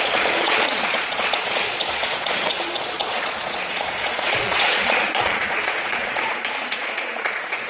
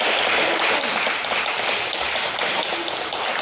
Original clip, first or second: second